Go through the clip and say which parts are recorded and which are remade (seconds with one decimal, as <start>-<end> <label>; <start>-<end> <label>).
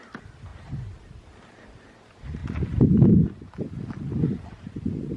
0.0-0.5 recorded; 0.5-1.2 remade; 1.2-5.2 recorded